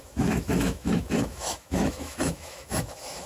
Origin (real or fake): fake